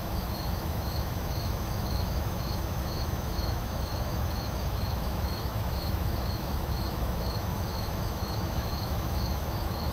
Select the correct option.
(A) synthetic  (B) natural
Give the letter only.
A